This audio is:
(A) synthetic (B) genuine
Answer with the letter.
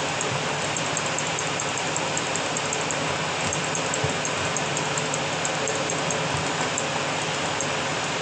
B